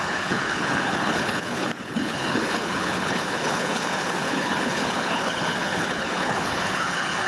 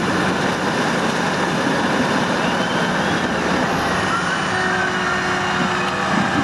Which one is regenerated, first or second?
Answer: first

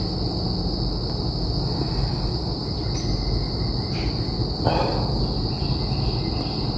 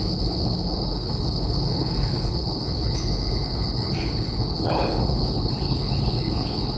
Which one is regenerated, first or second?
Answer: second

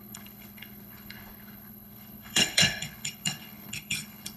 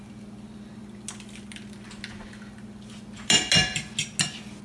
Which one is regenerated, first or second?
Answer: first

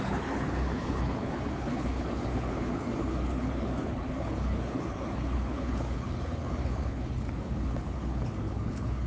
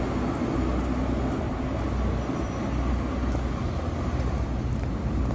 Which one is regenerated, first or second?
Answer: first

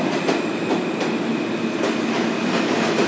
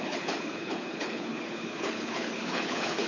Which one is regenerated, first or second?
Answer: second